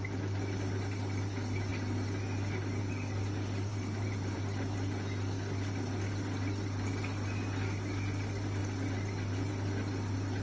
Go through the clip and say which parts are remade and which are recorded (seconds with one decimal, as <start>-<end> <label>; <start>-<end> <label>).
0.0-3.7 recorded; 3.7-4.4 remade; 4.4-10.4 recorded

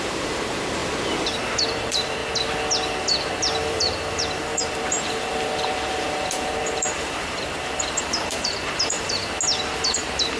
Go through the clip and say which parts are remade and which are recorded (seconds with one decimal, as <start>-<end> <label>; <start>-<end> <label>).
0.0-0.8 remade; 0.8-1.6 recorded; 1.6-2.2 remade; 2.2-3.3 recorded; 3.3-9.2 remade; 9.2-9.9 recorded; 9.9-10.4 remade

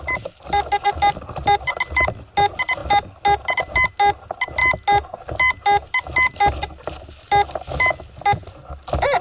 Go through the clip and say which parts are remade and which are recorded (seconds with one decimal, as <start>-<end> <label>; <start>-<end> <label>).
0.0-9.2 recorded

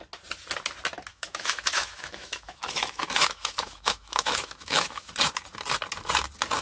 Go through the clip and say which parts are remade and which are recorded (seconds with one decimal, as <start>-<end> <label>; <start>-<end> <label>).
0.0-1.1 recorded; 1.1-5.1 remade; 5.1-6.6 recorded

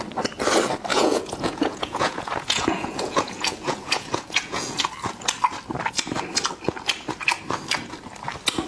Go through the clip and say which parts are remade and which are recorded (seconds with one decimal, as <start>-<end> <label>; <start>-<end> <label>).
0.0-0.9 recorded; 0.9-4.9 remade; 4.9-8.7 recorded

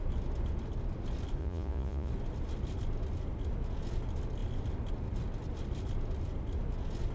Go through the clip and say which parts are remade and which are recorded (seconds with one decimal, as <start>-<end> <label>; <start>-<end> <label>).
0.0-1.4 recorded; 1.4-2.1 remade; 2.1-7.1 recorded

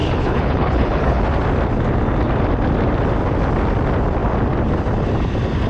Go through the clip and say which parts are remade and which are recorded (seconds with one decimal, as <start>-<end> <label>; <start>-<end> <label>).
0.0-1.2 remade; 1.2-5.7 recorded